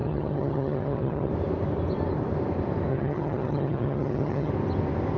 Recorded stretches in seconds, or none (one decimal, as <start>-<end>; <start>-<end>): 1.3-2.9; 4.5-5.2